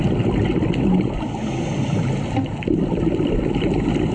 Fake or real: real